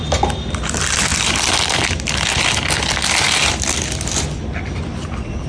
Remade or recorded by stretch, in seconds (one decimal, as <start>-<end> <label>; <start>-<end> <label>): 0.0-5.5 recorded